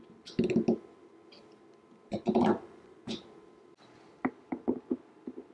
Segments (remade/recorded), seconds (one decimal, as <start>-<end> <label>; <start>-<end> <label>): 0.0-2.1 recorded; 2.1-3.2 remade; 3.2-5.5 recorded